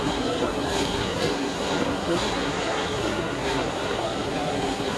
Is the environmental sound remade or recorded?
remade